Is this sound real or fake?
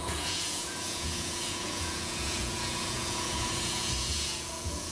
fake